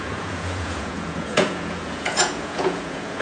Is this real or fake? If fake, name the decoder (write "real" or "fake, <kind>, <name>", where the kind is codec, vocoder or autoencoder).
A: fake, vocoder, Vocos